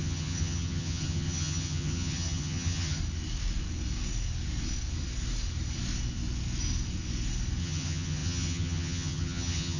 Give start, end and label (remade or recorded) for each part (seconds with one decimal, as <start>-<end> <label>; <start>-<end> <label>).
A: 0.0-3.0 remade; 3.0-7.6 recorded; 7.6-9.8 remade